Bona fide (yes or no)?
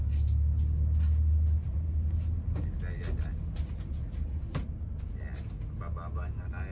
yes